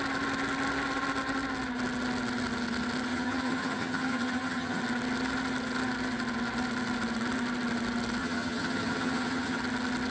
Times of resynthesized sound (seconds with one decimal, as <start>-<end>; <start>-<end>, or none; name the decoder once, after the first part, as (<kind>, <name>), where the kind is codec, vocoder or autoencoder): 3.1-4.8 (vocoder, HiFi-GAN); 8.2-9.6